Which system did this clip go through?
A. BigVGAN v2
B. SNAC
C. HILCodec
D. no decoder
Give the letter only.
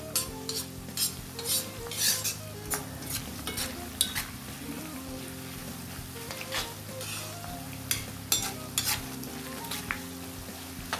D